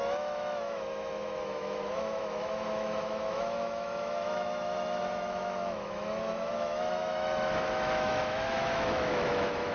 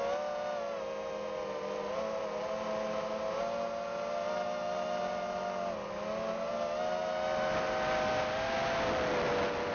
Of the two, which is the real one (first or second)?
second